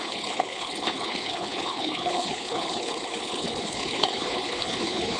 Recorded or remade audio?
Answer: remade